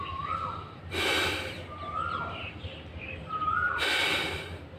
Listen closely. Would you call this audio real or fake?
real